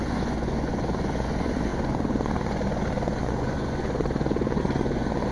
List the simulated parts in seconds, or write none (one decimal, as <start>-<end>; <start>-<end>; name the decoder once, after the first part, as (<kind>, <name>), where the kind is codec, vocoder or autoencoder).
0.0-5.3 (vocoder, Vocos)